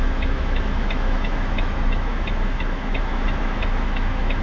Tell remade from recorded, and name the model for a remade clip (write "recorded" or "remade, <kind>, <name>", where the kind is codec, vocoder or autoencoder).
remade, autoencoder, DAC-VAE